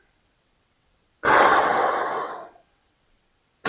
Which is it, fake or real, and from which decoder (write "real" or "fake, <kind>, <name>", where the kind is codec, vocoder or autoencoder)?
fake, vocoder, WaveNeXt